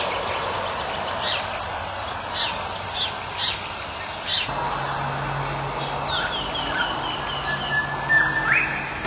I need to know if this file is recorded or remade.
recorded